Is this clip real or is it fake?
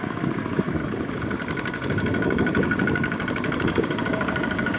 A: fake